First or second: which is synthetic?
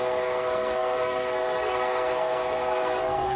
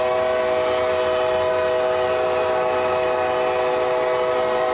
first